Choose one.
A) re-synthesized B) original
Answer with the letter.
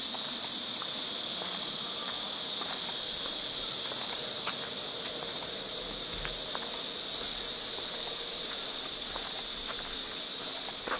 B